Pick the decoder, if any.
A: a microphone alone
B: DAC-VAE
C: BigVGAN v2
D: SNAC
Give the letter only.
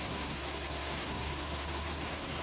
D